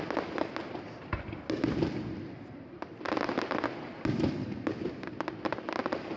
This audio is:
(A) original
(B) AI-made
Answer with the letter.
A